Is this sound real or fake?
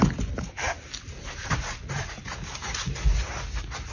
real